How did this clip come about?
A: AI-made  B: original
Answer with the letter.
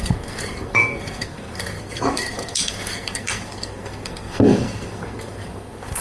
A